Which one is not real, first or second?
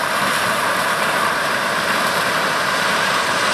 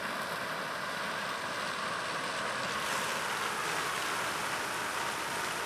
first